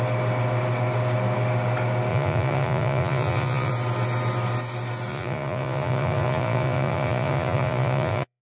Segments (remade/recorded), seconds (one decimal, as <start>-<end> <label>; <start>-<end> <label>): 0.0-2.1 recorded; 2.1-3.7 remade; 3.7-5.1 recorded; 5.1-8.4 remade